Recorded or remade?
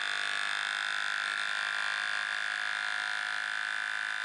recorded